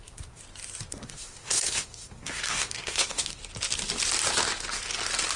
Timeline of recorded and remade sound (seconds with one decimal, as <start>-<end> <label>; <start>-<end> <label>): 0.0-0.4 remade; 0.4-0.9 recorded; 0.9-3.4 remade; 3.4-5.4 recorded